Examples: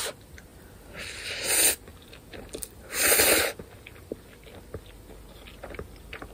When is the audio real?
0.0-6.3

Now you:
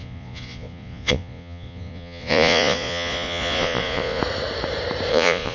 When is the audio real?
4.2-5.1

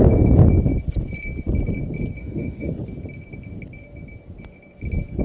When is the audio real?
0.0-2.2; 2.7-5.2

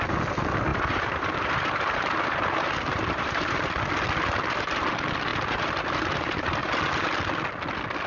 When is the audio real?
0.0-0.7; 3.5-5.3; 6.7-8.1

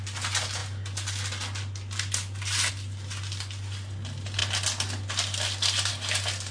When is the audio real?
0.0-6.5

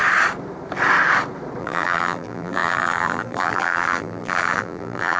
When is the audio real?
0.0-1.6